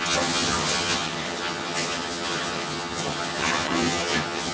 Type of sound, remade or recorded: remade